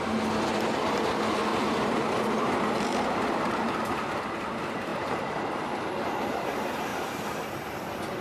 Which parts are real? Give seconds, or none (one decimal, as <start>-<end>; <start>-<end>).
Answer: 0.0-1.5; 4.0-4.9; 5.4-6.9